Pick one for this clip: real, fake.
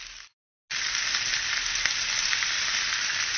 real